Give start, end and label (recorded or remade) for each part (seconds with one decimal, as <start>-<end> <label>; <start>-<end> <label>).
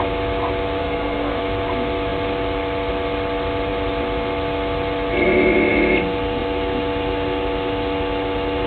0.0-0.8 recorded; 0.8-1.4 remade; 1.4-8.7 recorded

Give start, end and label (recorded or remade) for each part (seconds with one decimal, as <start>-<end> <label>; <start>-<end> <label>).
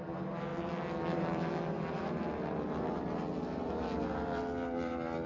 0.0-5.3 remade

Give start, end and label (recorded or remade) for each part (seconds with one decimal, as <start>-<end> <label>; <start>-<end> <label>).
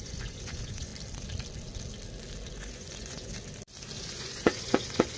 0.0-0.9 remade; 0.9-2.5 recorded; 2.5-3.3 remade; 3.3-4.0 recorded; 4.0-5.2 remade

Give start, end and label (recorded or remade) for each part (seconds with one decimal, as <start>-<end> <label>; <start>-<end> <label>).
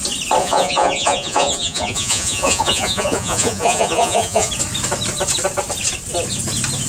0.0-0.4 recorded; 0.4-4.5 remade; 4.5-6.9 recorded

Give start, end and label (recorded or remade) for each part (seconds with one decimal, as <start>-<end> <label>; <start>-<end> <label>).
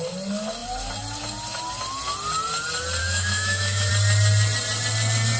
0.0-3.0 recorded; 3.0-3.9 remade; 3.9-5.4 recorded